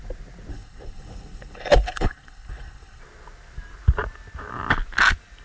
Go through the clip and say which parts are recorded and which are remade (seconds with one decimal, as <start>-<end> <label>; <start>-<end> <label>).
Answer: 0.0-0.5 recorded; 0.5-3.0 remade; 3.0-5.4 recorded